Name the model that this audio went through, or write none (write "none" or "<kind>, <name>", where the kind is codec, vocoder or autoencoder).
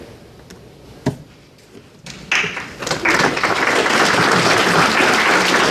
none